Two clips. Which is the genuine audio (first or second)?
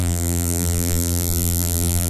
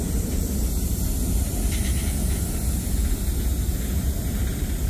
second